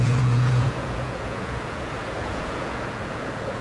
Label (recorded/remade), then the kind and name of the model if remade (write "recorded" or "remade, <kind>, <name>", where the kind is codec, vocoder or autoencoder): remade, vocoder, Vocos